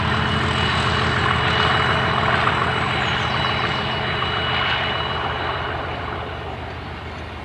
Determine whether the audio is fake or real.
real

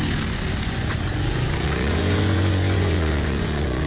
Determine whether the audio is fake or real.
fake